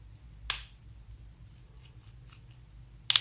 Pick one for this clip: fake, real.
real